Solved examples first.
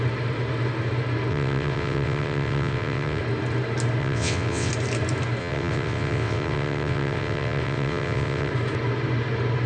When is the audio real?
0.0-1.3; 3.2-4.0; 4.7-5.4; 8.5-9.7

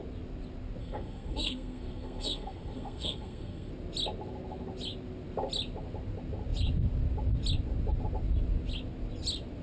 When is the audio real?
0.0-0.8; 3.7-9.6

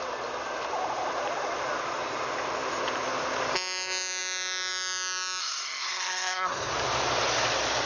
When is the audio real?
0.0-5.4; 6.7-7.9